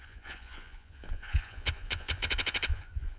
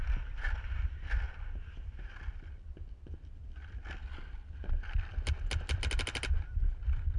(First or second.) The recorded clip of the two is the second